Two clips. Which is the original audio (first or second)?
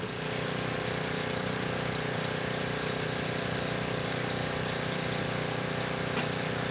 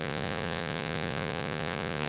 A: first